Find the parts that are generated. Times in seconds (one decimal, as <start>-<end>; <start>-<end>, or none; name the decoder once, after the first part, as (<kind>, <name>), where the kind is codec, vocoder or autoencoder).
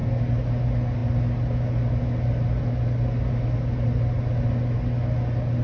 none